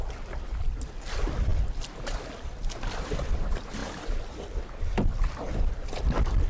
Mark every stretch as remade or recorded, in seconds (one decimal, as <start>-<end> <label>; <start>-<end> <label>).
0.0-3.8 remade; 3.8-5.5 recorded; 5.5-6.5 remade